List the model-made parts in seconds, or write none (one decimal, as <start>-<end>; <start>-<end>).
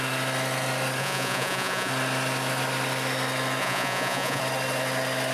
1.0-1.9; 3.6-4.4